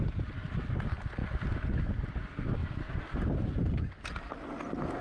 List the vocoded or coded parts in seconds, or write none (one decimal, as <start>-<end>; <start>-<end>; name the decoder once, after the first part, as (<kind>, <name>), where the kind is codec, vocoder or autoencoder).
2.6-3.8 (vocoder, BigVGAN v2)